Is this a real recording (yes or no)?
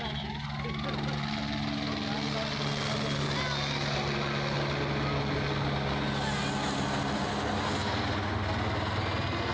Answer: yes